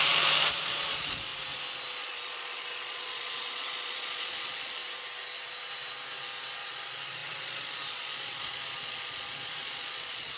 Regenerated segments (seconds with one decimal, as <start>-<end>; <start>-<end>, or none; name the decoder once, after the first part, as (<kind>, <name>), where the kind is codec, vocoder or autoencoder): 0.0-1.3 (vocoder, Vocos); 2.0-4.8; 6.6-10.4